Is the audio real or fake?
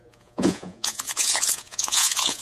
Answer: fake